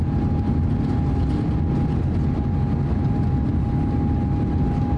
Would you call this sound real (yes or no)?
yes